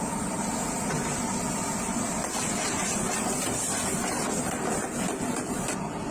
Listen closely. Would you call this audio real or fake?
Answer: real